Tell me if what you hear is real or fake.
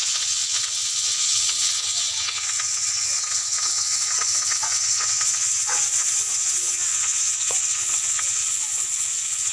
fake